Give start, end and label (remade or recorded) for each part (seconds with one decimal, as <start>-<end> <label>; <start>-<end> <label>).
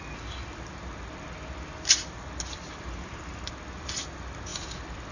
0.0-2.7 recorded; 2.7-3.5 remade; 3.5-5.1 recorded